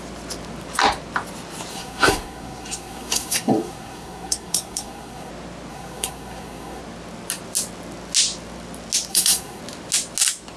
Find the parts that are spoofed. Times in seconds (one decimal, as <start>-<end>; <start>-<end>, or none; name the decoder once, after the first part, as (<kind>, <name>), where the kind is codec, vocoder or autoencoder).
1.7-5.3 (codec, SNAC); 5.7-6.8; 9.1-9.6